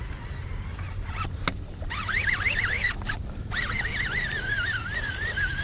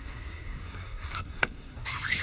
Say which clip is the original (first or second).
first